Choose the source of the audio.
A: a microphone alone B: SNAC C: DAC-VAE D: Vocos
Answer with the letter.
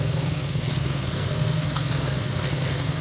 B